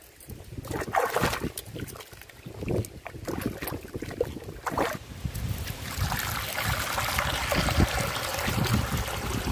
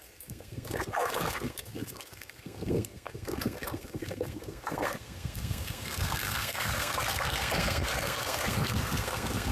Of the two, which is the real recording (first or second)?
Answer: first